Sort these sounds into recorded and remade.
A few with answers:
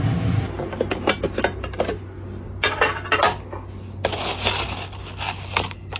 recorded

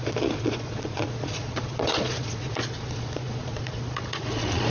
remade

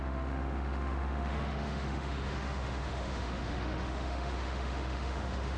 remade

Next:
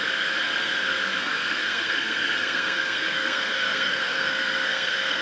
remade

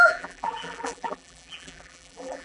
remade